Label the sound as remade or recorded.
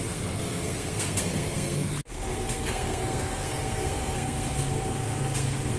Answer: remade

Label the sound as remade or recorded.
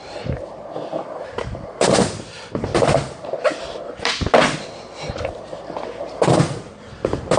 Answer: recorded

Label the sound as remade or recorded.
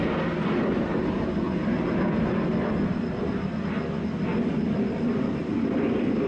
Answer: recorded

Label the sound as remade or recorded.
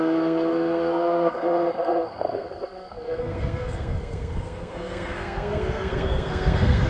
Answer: remade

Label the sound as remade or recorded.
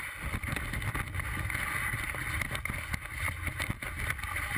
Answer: recorded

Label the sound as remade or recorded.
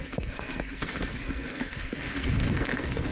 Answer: remade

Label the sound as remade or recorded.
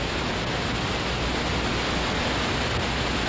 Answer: recorded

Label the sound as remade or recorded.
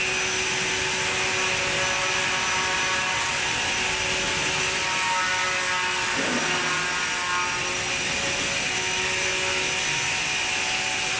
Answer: recorded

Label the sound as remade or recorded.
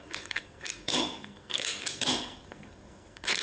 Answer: remade